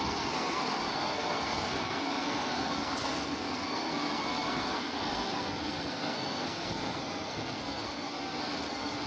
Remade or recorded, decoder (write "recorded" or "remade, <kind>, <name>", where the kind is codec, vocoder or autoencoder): remade, codec, SNAC